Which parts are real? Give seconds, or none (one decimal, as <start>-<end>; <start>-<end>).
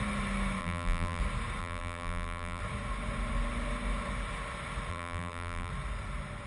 0.0-0.6; 1.2-1.6; 2.6-4.9; 5.7-6.5